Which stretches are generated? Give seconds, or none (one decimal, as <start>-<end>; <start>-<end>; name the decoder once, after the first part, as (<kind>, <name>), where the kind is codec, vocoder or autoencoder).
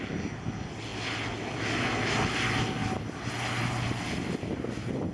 none